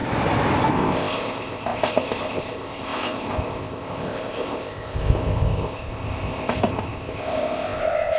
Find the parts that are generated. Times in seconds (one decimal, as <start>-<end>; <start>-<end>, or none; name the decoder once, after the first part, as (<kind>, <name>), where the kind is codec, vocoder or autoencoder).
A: 0.7-8.2 (codec, ZipCodec)